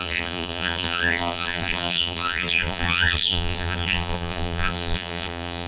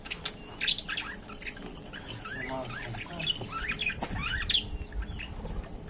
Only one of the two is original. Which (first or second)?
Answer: second